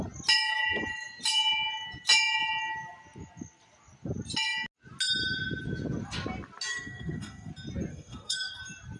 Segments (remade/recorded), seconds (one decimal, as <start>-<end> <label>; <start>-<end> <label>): 0.0-6.7 recorded; 6.7-7.5 remade; 7.5-7.9 recorded; 7.9-8.6 remade; 8.6-9.0 recorded